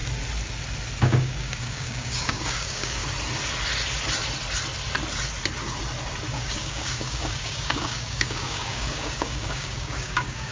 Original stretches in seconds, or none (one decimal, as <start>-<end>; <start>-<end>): 0.0-1.0; 3.0-6.3